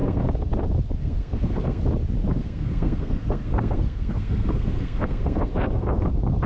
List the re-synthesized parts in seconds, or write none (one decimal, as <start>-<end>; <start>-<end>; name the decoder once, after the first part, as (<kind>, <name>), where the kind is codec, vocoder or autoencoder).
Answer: 0.0-0.5 (codec, SNAC); 1.0-1.8; 2.4-6.5